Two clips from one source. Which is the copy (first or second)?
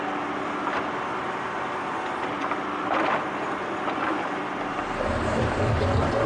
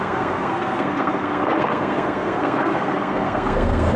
second